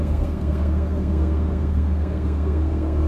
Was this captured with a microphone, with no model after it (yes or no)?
no